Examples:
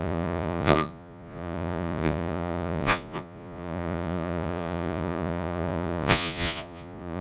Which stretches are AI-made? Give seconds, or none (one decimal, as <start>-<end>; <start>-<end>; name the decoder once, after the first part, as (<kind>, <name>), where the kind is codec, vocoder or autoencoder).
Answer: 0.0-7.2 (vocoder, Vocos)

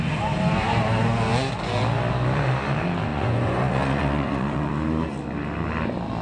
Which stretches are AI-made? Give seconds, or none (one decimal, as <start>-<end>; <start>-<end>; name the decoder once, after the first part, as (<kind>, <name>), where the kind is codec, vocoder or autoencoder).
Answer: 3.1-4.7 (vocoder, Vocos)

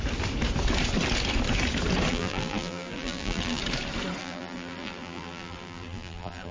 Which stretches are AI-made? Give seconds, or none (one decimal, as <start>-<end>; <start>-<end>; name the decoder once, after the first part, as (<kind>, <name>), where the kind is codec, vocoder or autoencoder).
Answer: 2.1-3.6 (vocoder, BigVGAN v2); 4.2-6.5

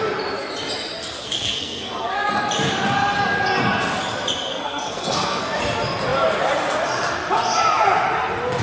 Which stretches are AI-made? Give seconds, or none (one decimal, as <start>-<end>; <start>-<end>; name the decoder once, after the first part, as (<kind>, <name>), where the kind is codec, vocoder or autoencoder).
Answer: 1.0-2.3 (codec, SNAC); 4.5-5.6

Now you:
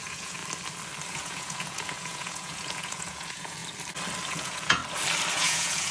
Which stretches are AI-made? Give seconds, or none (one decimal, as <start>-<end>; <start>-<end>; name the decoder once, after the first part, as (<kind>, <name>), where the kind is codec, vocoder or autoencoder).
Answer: 0.0-0.4 (vocoder, Vocos); 1.1-3.6; 4.3-4.8; 5.3-5.9

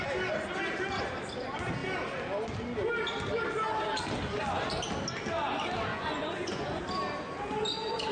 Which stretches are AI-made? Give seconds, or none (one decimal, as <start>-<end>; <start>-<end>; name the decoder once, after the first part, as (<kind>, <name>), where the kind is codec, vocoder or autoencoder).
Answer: 5.9-6.8 (vocoder, Vocos)